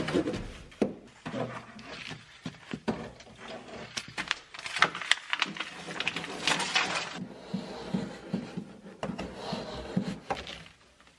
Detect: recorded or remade recorded